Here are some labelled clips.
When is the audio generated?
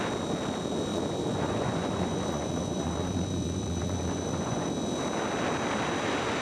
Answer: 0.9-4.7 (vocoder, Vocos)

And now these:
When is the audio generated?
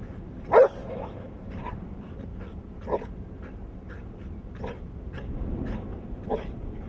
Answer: 0.8-1.5 (autoencoder, DAC-VAE)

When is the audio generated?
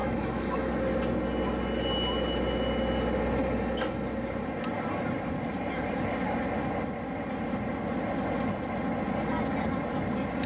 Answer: 0.0-0.7 (autoencoder, DAC-VAE)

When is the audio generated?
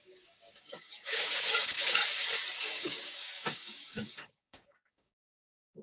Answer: 0.0-2.0 (codec, DAC); 2.6-5.8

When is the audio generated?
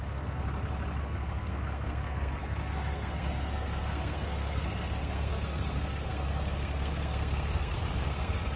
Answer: 0.0-0.4 (codec, SNAC); 1.0-8.6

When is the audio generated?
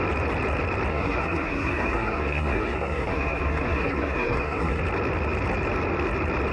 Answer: 0.9-4.8 (codec, SNAC)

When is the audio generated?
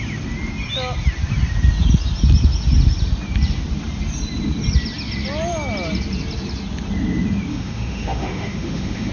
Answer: 7.5-9.1 (autoencoder, DAC-VAE)